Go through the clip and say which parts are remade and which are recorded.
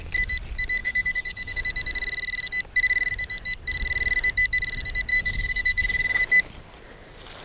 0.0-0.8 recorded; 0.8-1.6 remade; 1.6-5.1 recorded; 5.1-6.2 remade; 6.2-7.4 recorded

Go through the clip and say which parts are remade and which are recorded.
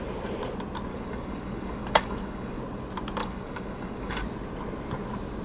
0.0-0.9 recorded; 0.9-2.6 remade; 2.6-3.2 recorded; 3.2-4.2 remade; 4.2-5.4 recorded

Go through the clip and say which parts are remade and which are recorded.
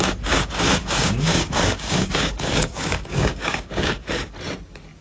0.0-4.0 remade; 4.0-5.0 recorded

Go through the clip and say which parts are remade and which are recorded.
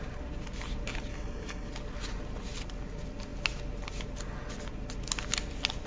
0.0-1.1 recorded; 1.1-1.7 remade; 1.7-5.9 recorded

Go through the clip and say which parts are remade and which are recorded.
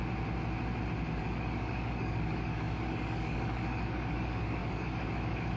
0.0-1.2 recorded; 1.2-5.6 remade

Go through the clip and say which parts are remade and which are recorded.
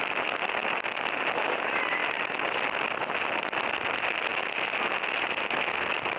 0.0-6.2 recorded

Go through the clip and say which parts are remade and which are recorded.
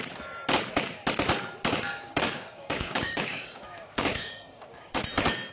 0.0-1.7 recorded; 1.7-5.0 remade; 5.0-5.5 recorded